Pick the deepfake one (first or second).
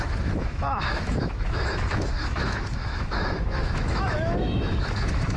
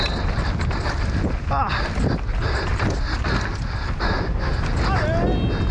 first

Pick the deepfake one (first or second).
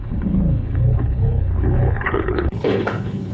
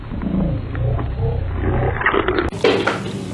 first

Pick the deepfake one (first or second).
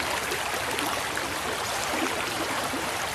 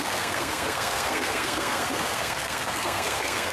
second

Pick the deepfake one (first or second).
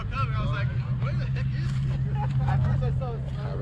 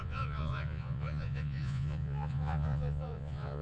second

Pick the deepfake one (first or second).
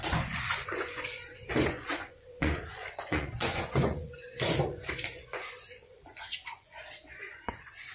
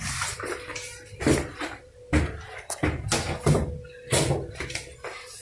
first